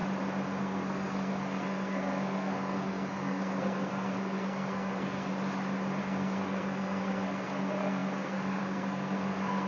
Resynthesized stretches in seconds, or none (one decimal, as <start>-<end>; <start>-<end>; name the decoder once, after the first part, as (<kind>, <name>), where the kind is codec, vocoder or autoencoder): 0.6-5.3 (codec, SNAC); 6.0-9.7